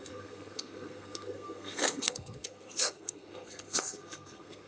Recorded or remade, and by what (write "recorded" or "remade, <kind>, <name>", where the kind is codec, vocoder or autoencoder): remade, codec, SNAC